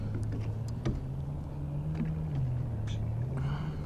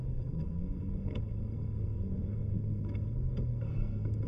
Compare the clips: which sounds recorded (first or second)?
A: first